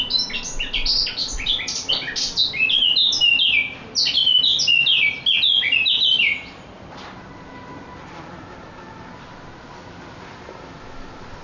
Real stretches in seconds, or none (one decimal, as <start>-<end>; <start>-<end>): 0.0-11.4